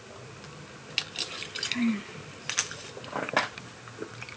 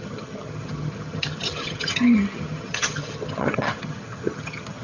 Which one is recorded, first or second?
first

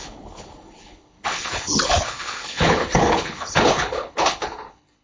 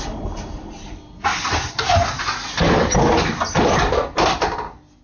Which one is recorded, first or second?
second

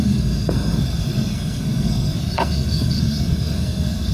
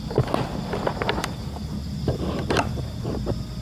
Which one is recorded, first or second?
second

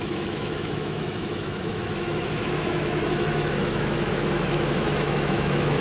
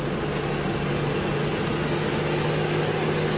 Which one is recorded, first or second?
second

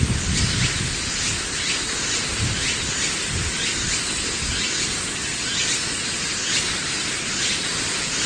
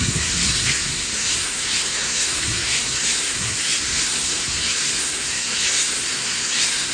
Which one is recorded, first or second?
first